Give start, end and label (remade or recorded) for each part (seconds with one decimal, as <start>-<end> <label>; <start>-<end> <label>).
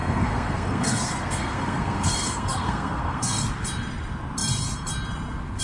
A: 0.0-3.4 remade; 3.4-5.6 recorded